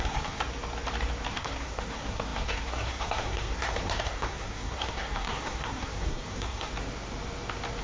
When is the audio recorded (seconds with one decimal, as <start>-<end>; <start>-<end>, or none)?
0.4-1.3; 6.7-7.8